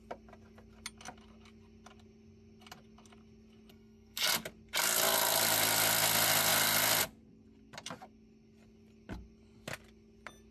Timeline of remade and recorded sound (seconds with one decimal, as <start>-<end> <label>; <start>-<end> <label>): 0.0-3.7 recorded; 3.7-4.3 remade; 4.3-10.5 recorded